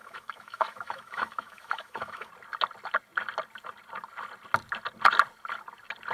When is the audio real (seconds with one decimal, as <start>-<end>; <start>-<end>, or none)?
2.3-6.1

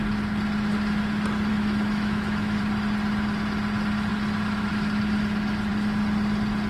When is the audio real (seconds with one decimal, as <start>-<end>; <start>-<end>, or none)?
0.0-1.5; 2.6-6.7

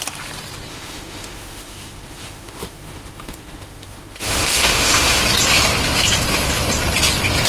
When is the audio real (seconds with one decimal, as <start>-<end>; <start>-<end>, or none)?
0.0-0.7; 5.2-7.5

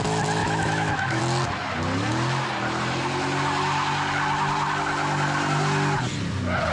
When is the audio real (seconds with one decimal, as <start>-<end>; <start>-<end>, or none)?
0.0-0.4; 1.2-6.7